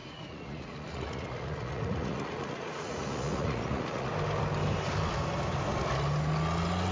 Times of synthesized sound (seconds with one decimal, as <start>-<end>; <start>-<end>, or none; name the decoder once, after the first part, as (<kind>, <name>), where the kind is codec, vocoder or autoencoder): 0.0-4.1 (vocoder, Vocos)